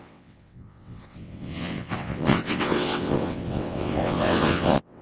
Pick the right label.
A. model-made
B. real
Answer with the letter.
A